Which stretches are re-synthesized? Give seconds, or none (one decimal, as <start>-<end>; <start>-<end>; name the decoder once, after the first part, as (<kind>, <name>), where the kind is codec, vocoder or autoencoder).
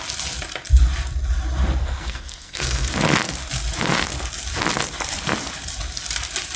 1.8-2.9 (codec, SNAC)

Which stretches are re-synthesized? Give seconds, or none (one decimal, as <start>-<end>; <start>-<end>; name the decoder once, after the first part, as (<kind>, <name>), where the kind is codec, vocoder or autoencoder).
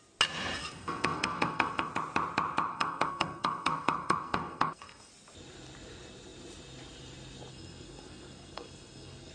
0.6-1.9 (codec, SNAC); 2.7-5.1; 7.5-9.3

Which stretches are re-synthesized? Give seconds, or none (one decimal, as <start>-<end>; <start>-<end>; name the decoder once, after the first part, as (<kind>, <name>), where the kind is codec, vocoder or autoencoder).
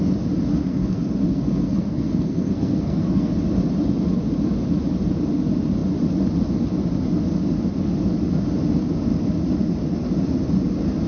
0.6-3.3 (codec, SNAC)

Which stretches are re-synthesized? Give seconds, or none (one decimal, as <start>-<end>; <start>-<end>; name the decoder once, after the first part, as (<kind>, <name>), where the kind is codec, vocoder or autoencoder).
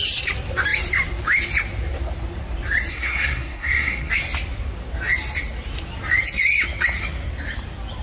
2.9-4.1 (codec, SNAC)